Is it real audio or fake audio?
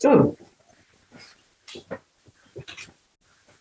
real